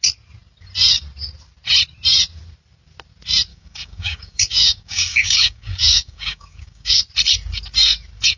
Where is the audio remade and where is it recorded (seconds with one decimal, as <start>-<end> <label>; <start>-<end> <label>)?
0.0-3.5 recorded; 3.5-7.0 remade; 7.0-8.4 recorded